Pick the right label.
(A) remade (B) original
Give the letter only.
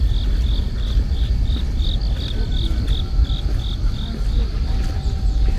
B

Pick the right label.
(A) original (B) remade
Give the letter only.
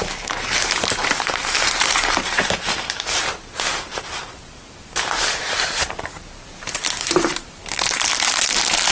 B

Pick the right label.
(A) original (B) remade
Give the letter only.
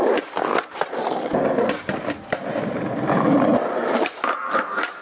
B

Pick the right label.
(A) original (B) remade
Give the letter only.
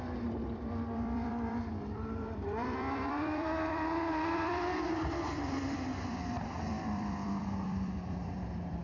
B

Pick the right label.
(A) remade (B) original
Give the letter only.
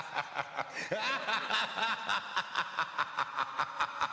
B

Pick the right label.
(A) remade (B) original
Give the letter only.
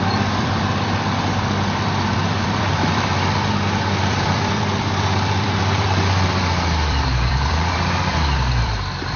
A